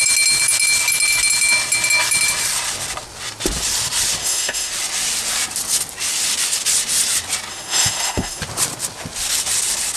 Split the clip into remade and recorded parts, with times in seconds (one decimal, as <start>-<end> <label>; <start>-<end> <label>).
0.0-4.2 recorded; 4.2-4.7 remade; 4.7-7.5 recorded; 7.5-8.4 remade; 8.4-10.0 recorded